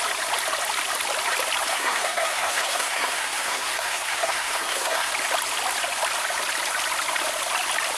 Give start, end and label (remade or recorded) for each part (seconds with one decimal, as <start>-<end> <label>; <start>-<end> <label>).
0.0-1.7 recorded; 1.7-5.1 remade; 5.1-8.0 recorded

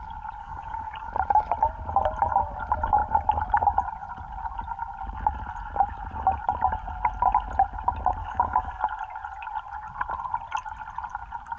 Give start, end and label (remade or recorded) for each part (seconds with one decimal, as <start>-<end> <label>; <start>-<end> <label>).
0.0-0.4 recorded; 0.4-1.1 remade; 1.1-8.2 recorded; 8.2-8.8 remade; 8.8-11.6 recorded

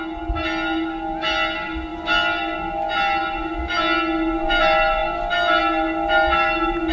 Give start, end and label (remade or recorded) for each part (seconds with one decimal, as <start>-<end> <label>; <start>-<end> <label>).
0.0-6.9 recorded

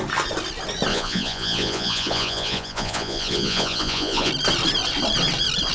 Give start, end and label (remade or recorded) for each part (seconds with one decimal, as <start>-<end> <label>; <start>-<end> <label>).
0.0-0.9 recorded; 0.9-4.3 remade; 4.3-5.7 recorded